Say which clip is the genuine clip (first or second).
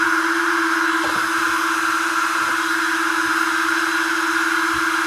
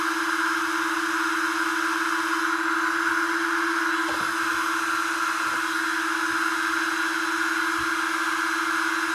second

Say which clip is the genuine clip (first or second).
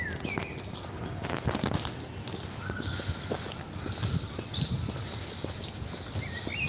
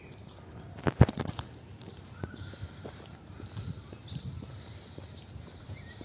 first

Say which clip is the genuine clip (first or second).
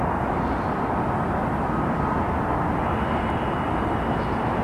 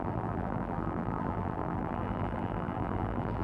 first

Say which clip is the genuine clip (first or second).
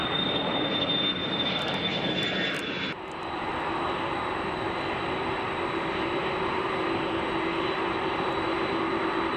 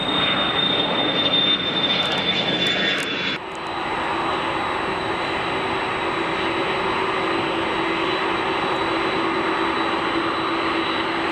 second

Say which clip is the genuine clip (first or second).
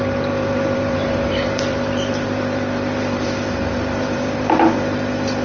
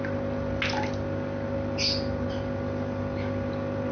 second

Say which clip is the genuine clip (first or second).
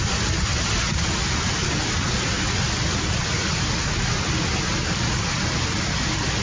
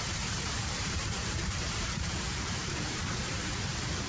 first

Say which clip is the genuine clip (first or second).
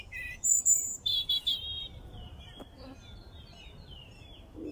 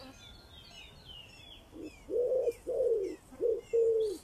second